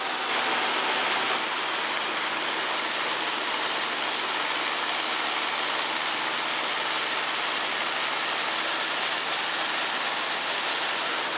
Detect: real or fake real